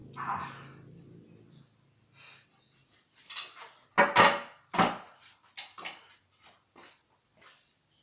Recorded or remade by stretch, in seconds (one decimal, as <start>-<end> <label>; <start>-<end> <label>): 0.0-8.0 recorded

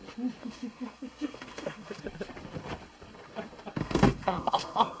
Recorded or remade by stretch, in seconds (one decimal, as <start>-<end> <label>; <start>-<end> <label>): 0.0-0.4 recorded; 0.4-2.0 remade; 2.0-3.8 recorded; 3.8-5.0 remade

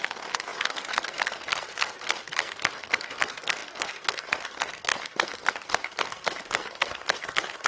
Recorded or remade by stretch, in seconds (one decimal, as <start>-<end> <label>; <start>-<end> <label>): 0.0-7.7 remade

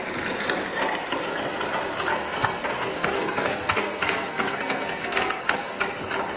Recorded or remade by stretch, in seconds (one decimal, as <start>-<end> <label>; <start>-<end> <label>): 0.0-2.1 recorded; 2.1-5.8 remade; 5.8-6.4 recorded

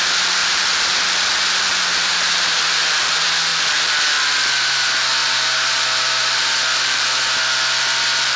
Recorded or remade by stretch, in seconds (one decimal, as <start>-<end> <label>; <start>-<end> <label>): 0.0-0.4 recorded; 0.4-1.1 remade; 1.1-1.9 recorded; 1.9-2.9 remade; 2.9-5.2 recorded; 5.2-6.6 remade; 6.6-8.4 recorded

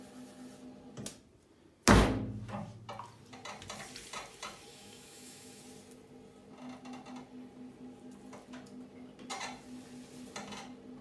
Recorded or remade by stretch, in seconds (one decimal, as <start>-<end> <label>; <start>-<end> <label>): 0.0-4.7 recorded; 4.7-5.6 remade; 5.6-11.0 recorded